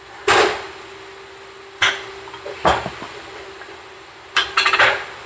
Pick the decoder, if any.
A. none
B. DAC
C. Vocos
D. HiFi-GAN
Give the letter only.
A